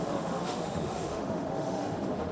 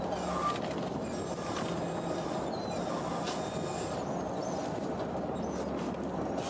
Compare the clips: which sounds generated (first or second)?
first